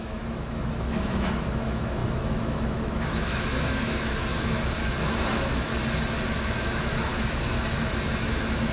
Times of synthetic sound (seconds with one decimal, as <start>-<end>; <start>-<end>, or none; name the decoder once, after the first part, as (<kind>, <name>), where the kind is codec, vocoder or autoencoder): 0.0-5.7 (autoencoder, DAC-VAE); 6.3-7.1; 8.2-8.7